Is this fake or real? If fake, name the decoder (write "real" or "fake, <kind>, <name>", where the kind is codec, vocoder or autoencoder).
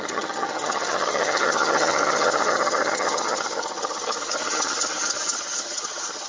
fake, vocoder, HiFi-GAN